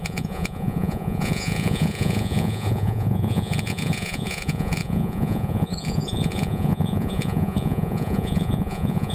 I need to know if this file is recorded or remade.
remade